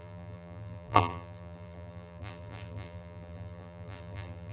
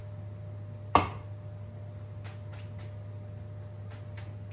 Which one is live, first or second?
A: second